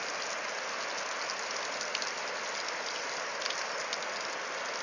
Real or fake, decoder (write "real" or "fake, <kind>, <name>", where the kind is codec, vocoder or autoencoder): real